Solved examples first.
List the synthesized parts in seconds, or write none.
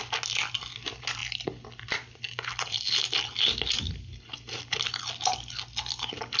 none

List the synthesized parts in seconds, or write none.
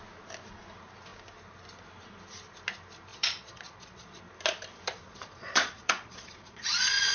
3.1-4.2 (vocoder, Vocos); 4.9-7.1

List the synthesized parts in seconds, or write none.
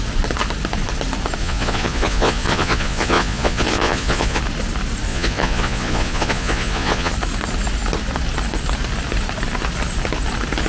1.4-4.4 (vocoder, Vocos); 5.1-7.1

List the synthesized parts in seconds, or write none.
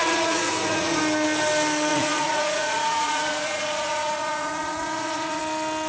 0.0-1.0 (vocoder, Vocos); 1.9-5.4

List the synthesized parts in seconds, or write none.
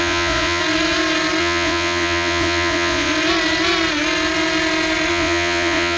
0.0-0.6 (vocoder, Vocos); 1.4-3.1; 5.1-6.0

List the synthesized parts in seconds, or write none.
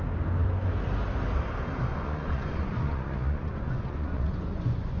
1.9-5.0 (vocoder, Vocos)